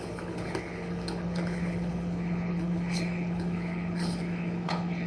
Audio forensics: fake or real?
fake